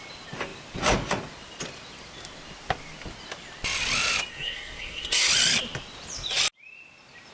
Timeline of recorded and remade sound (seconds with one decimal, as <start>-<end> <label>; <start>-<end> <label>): 0.0-4.3 recorded; 4.3-5.3 remade; 5.3-7.3 recorded